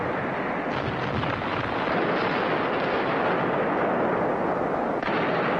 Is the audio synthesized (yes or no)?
no